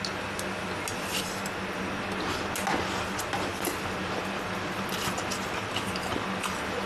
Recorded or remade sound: recorded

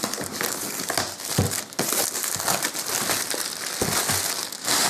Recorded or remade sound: recorded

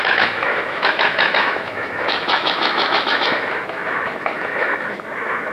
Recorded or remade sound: remade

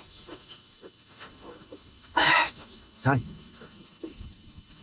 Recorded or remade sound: remade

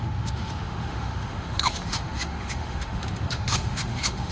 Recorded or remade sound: remade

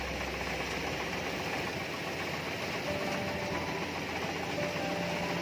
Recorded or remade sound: recorded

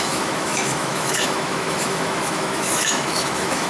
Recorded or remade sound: remade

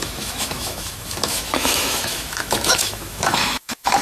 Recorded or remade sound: remade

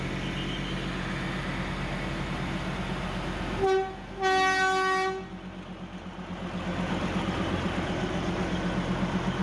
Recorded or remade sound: recorded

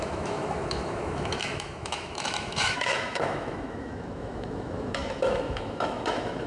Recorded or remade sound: remade